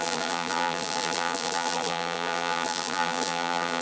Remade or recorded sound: remade